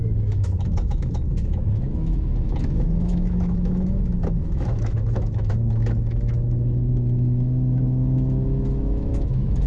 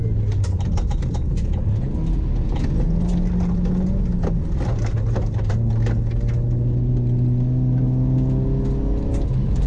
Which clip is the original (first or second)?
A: second